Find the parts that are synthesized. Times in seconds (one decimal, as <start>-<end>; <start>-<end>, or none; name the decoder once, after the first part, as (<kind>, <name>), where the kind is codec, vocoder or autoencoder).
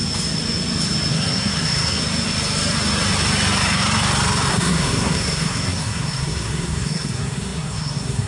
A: 1.1-2.0 (codec, SNAC); 4.5-8.3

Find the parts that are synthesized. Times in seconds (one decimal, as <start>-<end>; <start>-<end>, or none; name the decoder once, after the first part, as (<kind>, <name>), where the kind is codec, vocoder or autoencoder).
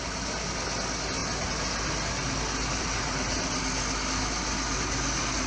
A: none